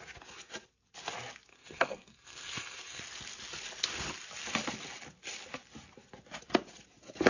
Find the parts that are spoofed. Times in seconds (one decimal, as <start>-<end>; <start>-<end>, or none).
1.5-3.0